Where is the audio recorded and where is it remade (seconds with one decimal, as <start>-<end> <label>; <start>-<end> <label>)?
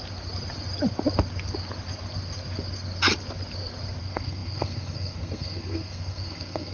0.0-4.0 recorded; 4.0-6.7 remade